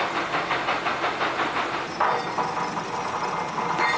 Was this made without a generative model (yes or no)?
yes